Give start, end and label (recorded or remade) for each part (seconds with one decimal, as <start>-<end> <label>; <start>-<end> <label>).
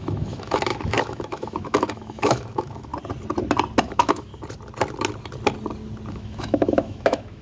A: 0.0-2.9 remade; 2.9-3.8 recorded; 3.8-4.3 remade; 4.3-6.1 recorded; 6.1-7.4 remade